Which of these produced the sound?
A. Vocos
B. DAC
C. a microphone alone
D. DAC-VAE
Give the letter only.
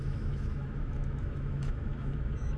D